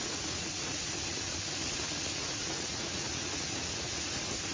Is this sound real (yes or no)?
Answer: no